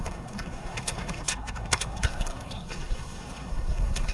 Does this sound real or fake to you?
fake